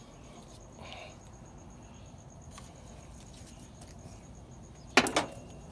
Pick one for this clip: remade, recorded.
recorded